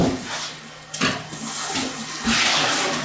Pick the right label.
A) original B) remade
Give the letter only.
A